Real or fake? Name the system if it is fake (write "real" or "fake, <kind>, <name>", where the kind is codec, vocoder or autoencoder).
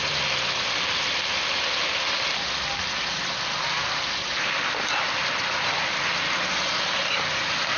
real